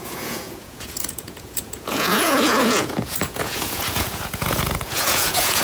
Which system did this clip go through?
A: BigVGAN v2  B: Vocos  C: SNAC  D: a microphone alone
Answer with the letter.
B